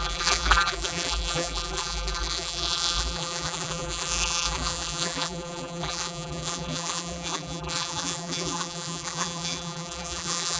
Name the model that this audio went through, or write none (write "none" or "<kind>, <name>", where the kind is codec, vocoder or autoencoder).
vocoder, BigVGAN v2